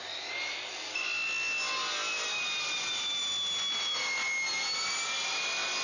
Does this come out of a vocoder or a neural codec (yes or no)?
no